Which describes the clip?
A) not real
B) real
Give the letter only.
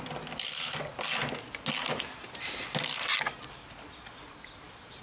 B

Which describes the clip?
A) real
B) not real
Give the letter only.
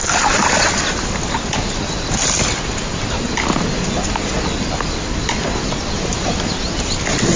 A